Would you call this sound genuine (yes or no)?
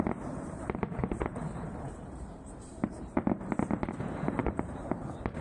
no